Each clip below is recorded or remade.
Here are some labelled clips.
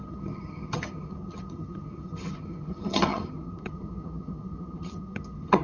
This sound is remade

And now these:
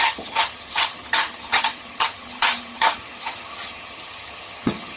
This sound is remade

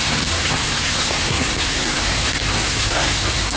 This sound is remade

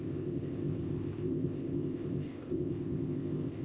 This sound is remade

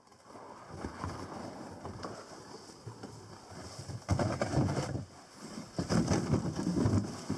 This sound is recorded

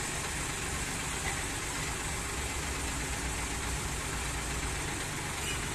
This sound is recorded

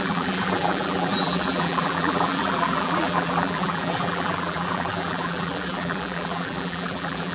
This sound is remade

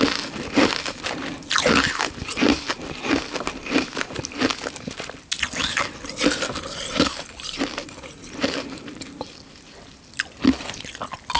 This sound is recorded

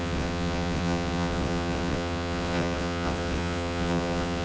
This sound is remade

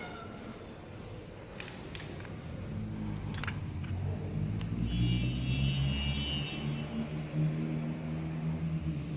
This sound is recorded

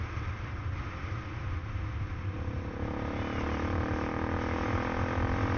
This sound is recorded